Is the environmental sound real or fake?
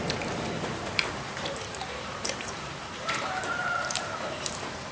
fake